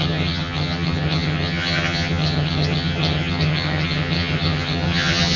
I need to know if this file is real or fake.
fake